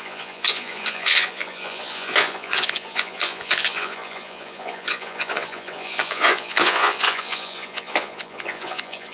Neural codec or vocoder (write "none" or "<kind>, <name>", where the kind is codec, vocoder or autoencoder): vocoder, Vocos